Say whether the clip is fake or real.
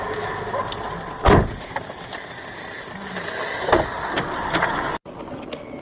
real